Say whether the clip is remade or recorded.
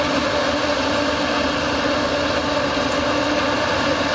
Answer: recorded